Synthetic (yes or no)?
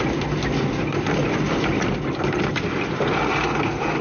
no